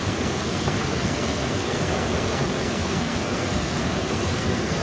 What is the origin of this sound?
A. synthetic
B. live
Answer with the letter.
A